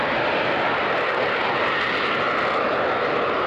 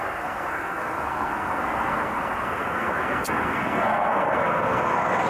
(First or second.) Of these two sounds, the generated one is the second